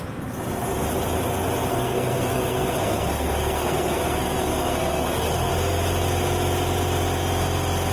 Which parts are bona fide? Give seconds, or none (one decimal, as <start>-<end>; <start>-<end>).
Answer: 0.0-1.7; 5.5-7.9